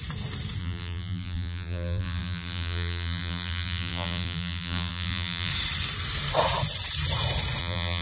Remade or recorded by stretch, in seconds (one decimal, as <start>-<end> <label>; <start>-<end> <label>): 0.0-0.6 recorded; 0.6-5.5 remade; 5.5-7.6 recorded; 7.6-8.0 remade